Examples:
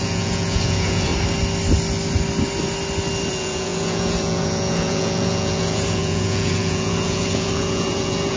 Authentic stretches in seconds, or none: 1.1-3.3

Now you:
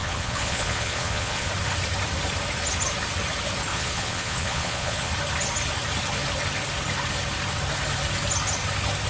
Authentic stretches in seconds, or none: 1.5-3.7; 5.1-9.1